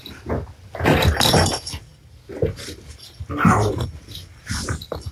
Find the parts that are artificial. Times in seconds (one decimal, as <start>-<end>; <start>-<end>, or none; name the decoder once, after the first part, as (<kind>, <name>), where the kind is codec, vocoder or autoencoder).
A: none

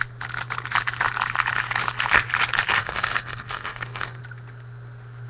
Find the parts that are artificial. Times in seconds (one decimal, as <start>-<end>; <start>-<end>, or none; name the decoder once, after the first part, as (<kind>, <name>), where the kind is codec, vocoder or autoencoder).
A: 2.7-4.2 (codec, SNAC)

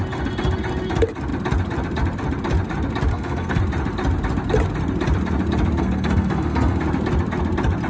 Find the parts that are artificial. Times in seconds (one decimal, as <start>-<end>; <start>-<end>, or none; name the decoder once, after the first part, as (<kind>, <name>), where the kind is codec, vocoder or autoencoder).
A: 3.1-3.6 (codec, SNAC); 5.8-6.8

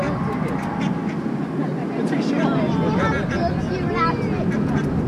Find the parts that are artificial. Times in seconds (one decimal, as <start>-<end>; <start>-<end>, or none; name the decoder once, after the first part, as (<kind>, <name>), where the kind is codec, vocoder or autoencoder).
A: none

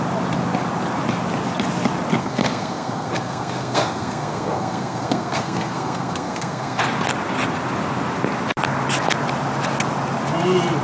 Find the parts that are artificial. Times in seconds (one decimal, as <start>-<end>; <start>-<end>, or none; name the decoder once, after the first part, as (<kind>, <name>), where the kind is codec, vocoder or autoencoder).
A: 2.2-6.8 (codec, SNAC)

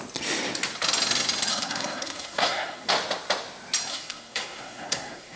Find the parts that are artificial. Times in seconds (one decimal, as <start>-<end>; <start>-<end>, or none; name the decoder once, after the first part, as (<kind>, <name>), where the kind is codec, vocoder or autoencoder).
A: 1.5-2.9 (codec, SNAC); 3.9-5.4

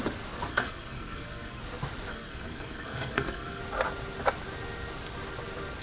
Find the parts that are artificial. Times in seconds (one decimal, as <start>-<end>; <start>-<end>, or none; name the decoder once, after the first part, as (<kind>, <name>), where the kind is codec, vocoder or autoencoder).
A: 0.5-1.6 (codec, SNAC); 2.1-3.6

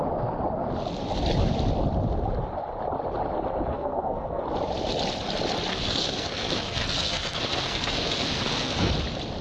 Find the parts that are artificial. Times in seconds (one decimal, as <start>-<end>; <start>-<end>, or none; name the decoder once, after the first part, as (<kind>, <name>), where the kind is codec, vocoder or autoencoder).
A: 3.7-4.4 (codec, SNAC); 5.7-8.9